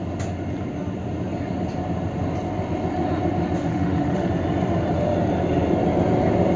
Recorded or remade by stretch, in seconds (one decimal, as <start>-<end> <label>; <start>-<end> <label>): 0.0-3.7 recorded; 3.7-4.3 remade; 4.3-6.6 recorded